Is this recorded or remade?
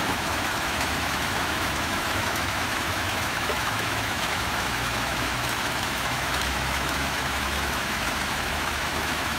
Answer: remade